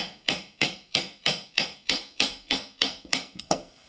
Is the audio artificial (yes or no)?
yes